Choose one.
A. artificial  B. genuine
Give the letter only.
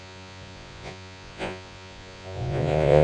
A